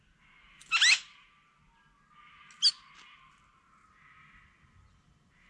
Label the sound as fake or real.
real